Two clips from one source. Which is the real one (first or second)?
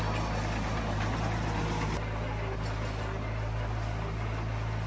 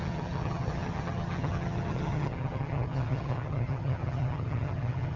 first